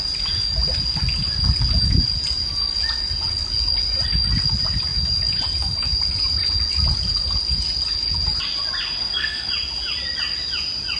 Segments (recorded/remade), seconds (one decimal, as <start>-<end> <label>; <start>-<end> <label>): 0.0-9.0 recorded; 9.0-9.5 remade; 9.5-11.0 recorded